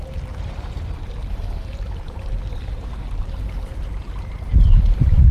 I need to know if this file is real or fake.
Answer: fake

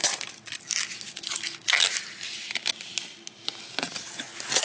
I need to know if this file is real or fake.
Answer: real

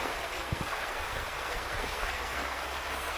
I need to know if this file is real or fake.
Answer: fake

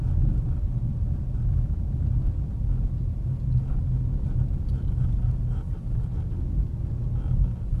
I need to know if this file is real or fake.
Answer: real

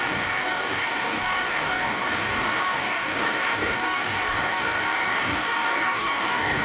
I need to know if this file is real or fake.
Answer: fake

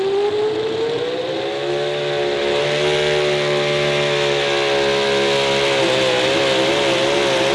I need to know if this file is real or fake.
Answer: real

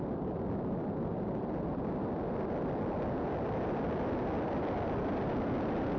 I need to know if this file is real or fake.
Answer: real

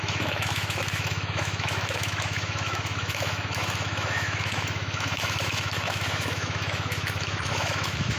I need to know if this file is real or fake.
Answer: fake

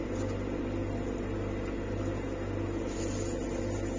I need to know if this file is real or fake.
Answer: real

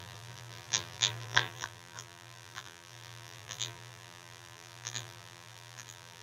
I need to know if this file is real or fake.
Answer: fake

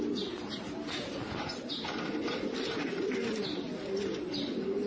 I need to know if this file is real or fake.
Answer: real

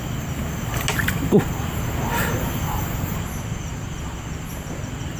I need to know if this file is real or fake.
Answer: real